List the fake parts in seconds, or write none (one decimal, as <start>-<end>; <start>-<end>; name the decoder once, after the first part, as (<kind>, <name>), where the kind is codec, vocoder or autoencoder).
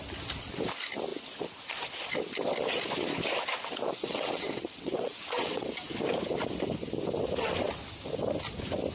4.0-5.7 (vocoder, WaveNeXt)